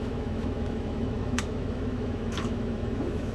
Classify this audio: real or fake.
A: fake